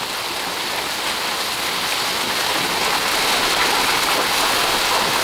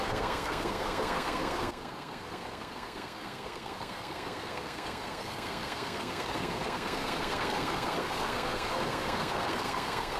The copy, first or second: second